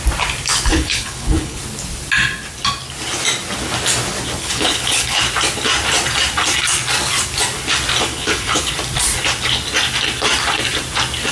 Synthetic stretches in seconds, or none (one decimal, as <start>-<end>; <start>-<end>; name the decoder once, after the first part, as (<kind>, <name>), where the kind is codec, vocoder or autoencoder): 0.7-1.6 (codec, HILCodec); 4.4-5.2; 8.1-8.7